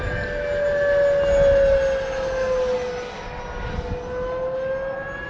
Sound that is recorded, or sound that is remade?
recorded